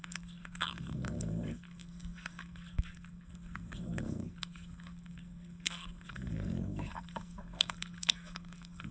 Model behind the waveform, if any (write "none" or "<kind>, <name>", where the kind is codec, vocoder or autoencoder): codec, SNAC